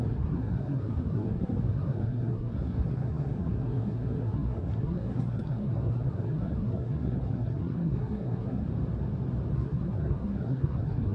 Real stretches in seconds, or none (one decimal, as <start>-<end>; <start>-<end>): 8.7-9.5